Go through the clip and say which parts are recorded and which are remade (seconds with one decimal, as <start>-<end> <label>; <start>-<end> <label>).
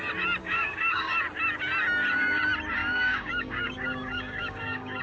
0.0-0.4 recorded; 0.4-1.2 remade; 1.2-2.8 recorded; 2.8-5.0 remade